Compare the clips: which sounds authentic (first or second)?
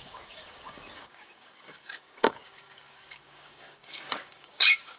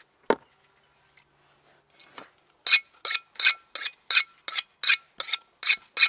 second